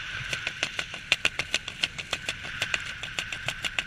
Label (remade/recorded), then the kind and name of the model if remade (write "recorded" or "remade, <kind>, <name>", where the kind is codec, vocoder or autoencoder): remade, vocoder, BigVGAN v2